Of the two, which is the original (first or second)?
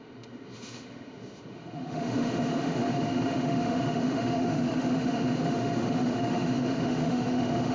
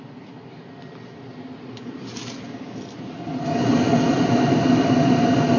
second